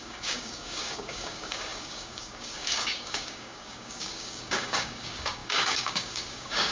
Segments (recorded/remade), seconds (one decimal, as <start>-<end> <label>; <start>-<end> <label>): 0.0-6.7 remade